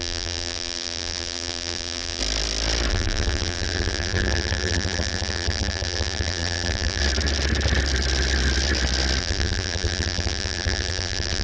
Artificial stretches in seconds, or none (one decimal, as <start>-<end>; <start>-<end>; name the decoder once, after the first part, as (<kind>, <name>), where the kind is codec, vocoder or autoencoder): 0.0-2.2 (vocoder, BigVGAN v2); 2.9-7.0; 9.2-11.4